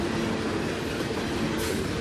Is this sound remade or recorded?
recorded